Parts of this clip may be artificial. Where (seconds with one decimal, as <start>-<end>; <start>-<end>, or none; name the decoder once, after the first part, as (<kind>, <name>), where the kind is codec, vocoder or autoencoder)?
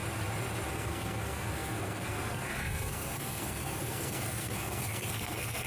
0.7-5.7 (codec, SNAC)